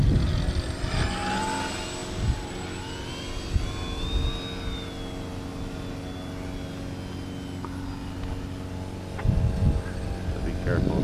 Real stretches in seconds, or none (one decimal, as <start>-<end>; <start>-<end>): 0.0-11.0